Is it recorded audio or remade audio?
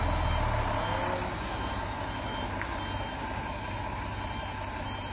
recorded